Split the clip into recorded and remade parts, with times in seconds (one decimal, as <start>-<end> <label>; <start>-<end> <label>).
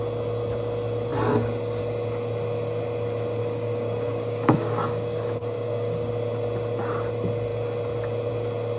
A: 0.0-3.4 recorded; 3.4-6.1 remade; 6.1-8.8 recorded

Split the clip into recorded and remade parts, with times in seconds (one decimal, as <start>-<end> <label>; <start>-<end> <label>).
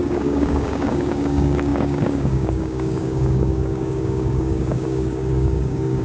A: 0.0-6.0 remade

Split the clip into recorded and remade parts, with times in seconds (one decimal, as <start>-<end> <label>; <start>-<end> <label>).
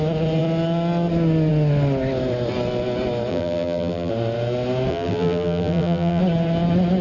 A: 0.0-3.3 recorded; 3.3-4.1 remade; 4.1-4.9 recorded; 4.9-6.2 remade; 6.2-7.0 recorded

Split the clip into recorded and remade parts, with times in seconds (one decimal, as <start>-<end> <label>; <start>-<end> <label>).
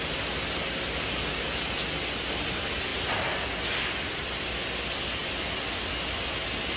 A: 0.0-6.8 recorded